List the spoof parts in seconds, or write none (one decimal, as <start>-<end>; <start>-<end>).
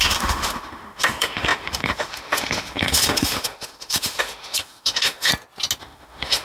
0.0-5.3; 5.8-6.4